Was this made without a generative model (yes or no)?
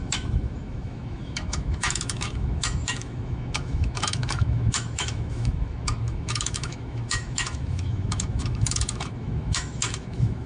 no